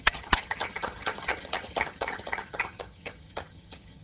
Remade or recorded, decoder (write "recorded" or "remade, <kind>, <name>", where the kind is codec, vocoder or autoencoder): remade, vocoder, HiFi-GAN